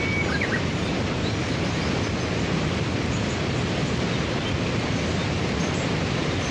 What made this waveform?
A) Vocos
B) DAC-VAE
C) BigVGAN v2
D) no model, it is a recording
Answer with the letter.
D